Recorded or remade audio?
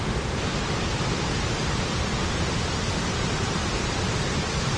recorded